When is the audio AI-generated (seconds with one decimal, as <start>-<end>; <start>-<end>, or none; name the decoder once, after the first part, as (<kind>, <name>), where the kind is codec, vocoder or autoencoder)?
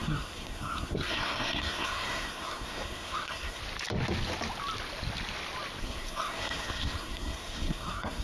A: 0.0-3.6 (codec, SNAC); 5.8-8.2